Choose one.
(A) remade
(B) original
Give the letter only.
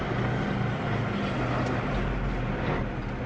B